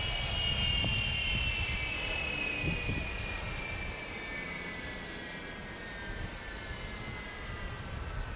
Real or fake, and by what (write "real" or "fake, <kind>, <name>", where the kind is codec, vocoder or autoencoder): real